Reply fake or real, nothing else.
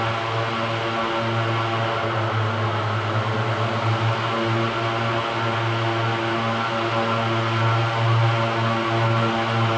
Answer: real